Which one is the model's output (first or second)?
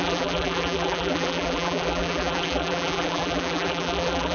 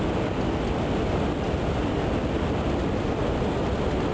first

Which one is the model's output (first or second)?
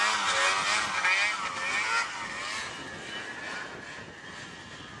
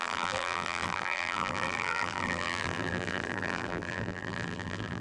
second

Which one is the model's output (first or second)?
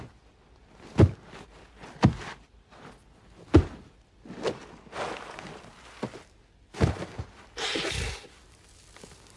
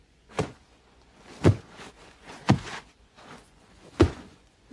second